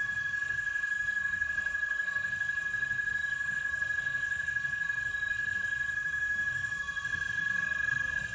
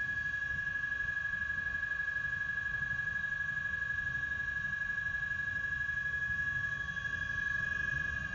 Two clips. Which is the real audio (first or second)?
second